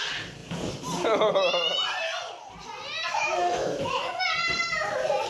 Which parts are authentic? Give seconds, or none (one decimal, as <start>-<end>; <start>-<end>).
0.0-3.1; 4.1-5.3